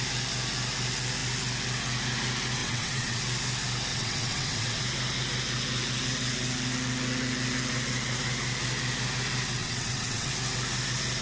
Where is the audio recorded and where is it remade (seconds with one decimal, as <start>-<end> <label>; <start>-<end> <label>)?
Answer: 0.0-2.6 recorded; 2.6-3.2 remade; 3.2-3.9 recorded; 3.9-4.8 remade; 4.8-9.6 recorded; 9.6-10.3 remade; 10.3-11.2 recorded